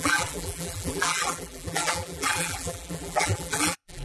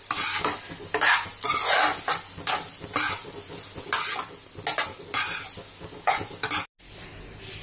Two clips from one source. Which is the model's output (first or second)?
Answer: first